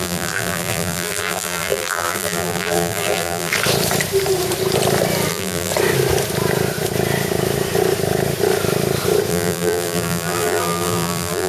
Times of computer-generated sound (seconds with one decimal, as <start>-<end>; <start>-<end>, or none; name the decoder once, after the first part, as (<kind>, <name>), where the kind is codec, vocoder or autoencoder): 0.0-3.5 (vocoder, BigVGAN v2); 5.3-5.7; 9.3-11.5